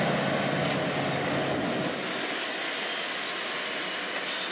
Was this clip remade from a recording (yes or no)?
no